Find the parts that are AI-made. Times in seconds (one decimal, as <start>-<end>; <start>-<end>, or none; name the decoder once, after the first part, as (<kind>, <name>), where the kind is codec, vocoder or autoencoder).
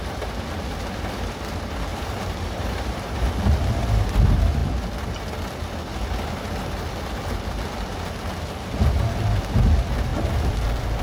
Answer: 1.9-3.3 (vocoder, BigVGAN v2)